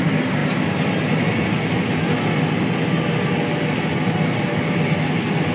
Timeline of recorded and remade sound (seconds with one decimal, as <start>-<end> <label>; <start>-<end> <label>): 0.0-5.5 recorded